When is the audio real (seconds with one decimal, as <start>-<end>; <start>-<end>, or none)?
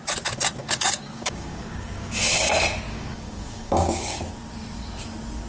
0.0-0.6; 2.5-2.9; 4.2-5.5